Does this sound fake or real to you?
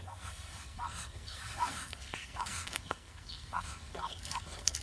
fake